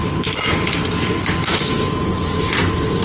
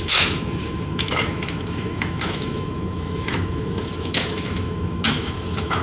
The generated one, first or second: second